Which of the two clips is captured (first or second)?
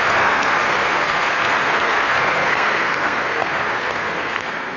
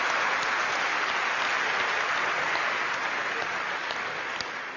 second